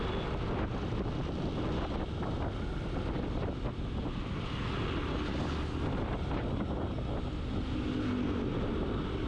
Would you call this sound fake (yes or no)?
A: no